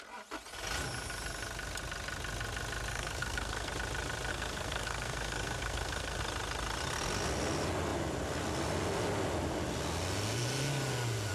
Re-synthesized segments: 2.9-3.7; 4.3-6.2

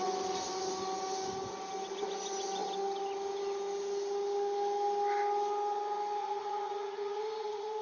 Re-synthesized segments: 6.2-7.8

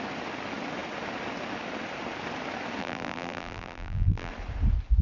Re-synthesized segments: 2.8-4.3

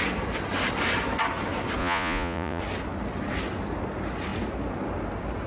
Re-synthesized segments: 1.8-2.6

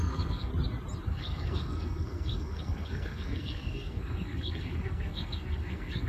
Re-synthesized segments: 0.0-0.5; 1.1-6.1

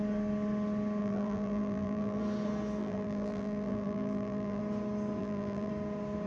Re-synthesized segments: 1.0-2.2; 2.8-4.6; 5.2-5.7